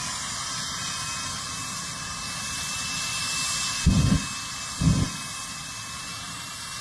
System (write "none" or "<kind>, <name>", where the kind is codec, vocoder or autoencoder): none